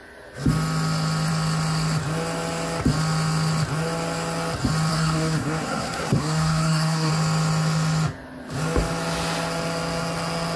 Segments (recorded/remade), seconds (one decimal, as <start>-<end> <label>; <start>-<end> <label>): 0.0-4.9 recorded; 4.9-7.1 remade; 7.1-10.6 recorded